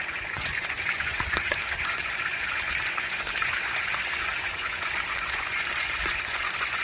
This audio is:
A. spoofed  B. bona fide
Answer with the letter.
A